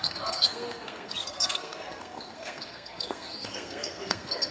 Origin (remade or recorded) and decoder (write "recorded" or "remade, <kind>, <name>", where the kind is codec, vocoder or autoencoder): remade, codec, SNAC